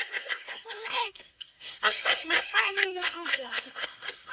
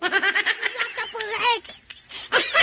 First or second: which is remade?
first